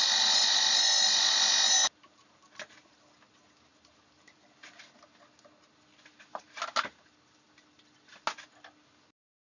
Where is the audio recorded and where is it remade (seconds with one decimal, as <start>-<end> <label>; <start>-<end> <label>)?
0.0-9.6 recorded